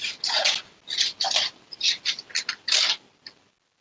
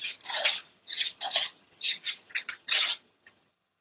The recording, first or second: first